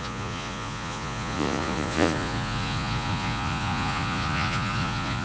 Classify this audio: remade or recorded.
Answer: remade